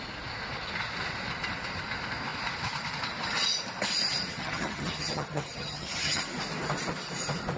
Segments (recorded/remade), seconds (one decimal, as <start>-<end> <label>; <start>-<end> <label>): 0.0-4.3 recorded; 4.3-6.2 remade; 6.2-7.6 recorded